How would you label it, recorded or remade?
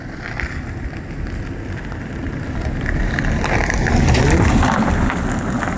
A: remade